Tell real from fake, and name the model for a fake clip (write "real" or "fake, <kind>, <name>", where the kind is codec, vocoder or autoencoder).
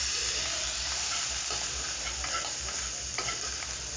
real